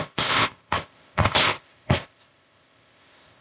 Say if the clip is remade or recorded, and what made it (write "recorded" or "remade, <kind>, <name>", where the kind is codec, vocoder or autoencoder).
remade, codec, ZipCodec